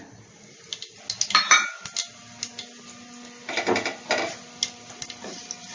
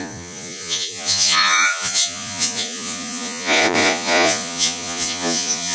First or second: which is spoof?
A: second